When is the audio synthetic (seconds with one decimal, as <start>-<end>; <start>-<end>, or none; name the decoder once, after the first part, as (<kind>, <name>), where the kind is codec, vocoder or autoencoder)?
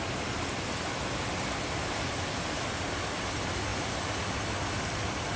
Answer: none